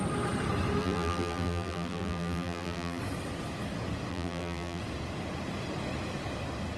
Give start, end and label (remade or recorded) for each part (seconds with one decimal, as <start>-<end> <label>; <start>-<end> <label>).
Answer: 0.0-0.8 recorded; 0.8-3.0 remade; 3.0-4.1 recorded; 4.1-4.8 remade; 4.8-6.8 recorded